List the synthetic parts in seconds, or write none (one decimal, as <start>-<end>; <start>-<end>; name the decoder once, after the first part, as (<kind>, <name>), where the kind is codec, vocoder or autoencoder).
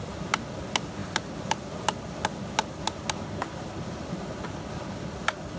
none